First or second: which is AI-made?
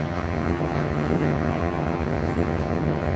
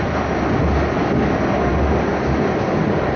first